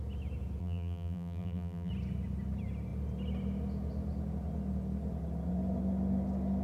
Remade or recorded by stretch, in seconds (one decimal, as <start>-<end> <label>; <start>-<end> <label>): 0.0-0.6 recorded; 0.6-1.9 remade; 1.9-6.6 recorded